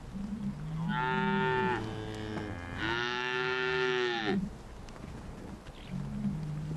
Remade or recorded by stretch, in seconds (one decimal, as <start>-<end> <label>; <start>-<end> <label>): 0.0-3.0 recorded; 3.0-4.2 remade; 4.2-6.8 recorded